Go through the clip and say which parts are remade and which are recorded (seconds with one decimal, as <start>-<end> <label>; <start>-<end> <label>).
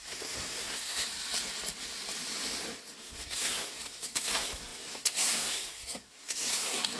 0.0-1.1 remade; 1.1-3.0 recorded; 3.0-7.0 remade